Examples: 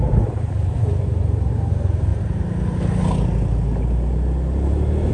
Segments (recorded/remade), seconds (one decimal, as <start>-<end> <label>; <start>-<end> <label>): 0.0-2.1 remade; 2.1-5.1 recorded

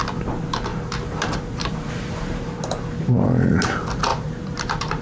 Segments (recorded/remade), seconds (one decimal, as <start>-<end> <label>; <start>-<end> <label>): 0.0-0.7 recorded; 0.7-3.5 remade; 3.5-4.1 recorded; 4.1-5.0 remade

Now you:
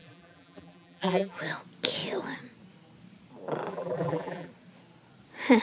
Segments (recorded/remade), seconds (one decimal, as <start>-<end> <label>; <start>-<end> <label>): 0.0-1.4 remade; 1.4-3.7 recorded; 3.7-4.5 remade; 4.5-5.6 recorded

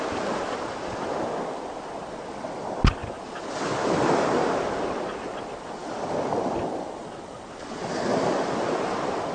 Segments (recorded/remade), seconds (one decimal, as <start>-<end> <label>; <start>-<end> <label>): 0.0-8.1 recorded; 8.1-9.3 remade

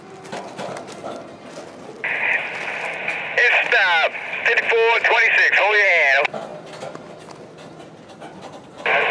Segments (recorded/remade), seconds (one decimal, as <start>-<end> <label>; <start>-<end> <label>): 0.0-9.1 recorded